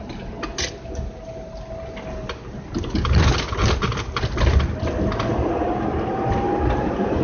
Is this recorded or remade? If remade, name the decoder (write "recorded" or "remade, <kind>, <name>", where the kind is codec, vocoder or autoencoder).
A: recorded